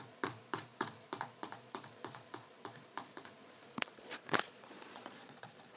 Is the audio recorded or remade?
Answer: remade